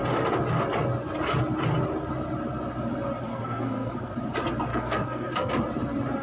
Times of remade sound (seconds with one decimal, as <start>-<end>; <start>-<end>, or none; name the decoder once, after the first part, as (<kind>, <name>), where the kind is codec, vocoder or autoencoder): 3.3-4.1 (codec, SNAC); 4.7-5.5